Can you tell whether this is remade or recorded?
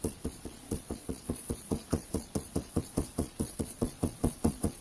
remade